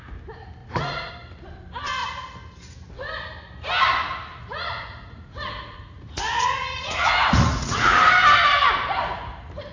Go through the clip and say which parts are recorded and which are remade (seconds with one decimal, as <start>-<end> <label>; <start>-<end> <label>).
0.0-0.6 recorded; 0.6-1.1 remade; 1.1-4.3 recorded; 4.3-8.0 remade; 8.0-9.7 recorded

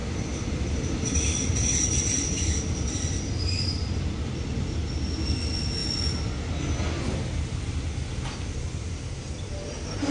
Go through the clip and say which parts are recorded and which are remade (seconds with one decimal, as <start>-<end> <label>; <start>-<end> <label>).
0.0-10.1 recorded

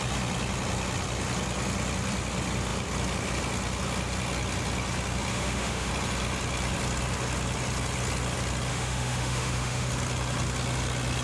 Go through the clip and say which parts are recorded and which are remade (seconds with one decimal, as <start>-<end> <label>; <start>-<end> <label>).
0.0-5.3 recorded; 5.3-5.9 remade; 5.9-8.7 recorded; 8.7-9.9 remade; 9.9-11.2 recorded

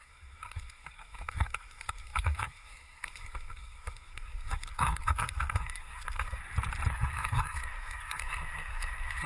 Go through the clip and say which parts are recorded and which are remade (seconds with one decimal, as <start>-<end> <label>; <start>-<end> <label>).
0.0-6.4 remade; 6.4-6.9 recorded; 6.9-9.3 remade

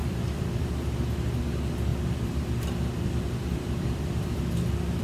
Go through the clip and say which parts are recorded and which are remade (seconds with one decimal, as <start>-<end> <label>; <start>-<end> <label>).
0.0-0.9 remade; 0.9-1.9 recorded; 1.9-5.0 remade